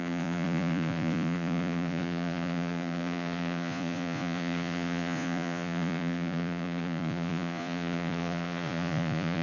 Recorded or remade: remade